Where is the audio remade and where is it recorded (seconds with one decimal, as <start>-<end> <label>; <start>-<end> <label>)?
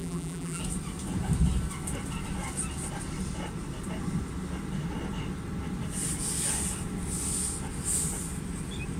0.0-0.6 remade; 0.6-9.0 recorded